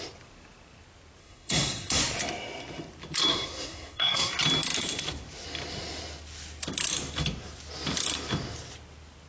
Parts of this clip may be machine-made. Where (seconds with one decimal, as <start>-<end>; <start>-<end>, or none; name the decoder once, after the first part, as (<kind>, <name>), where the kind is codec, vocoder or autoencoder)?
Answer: 1.2-2.0 (codec, SNAC); 3.3-4.3